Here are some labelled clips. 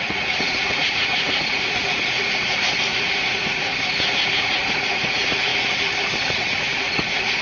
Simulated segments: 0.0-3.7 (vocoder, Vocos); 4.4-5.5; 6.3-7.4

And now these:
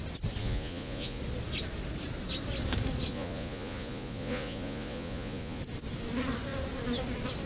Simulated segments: 0.4-1.2 (vocoder, Vocos); 3.1-5.6

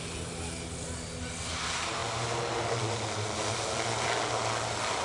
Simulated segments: none

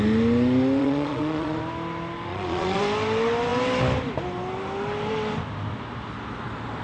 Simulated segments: 0.8-1.6 (vocoder, Vocos); 2.3-2.8

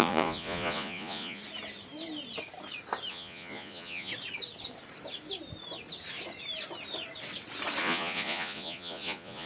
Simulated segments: 0.0-1.4 (vocoder, Vocos); 3.1-4.1; 7.8-9.5

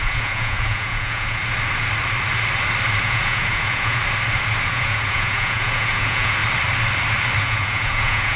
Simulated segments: 0.0-1.4 (vocoder, Vocos); 3.0-4.0; 4.7-6.4; 7.4-8.4

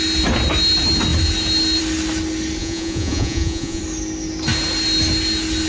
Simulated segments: 2.6-3.8 (vocoder, Vocos)